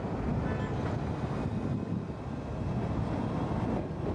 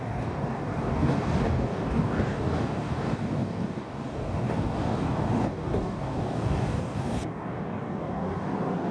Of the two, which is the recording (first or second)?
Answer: first